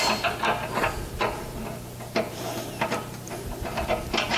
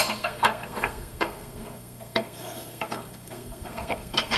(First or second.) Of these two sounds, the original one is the first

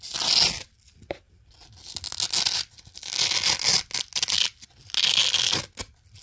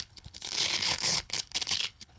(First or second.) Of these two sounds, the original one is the first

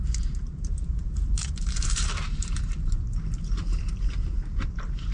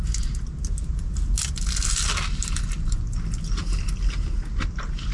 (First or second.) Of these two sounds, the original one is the second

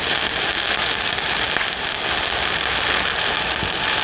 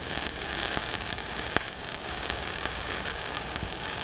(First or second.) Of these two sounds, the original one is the first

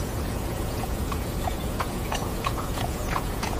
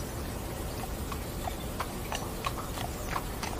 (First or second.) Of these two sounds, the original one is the second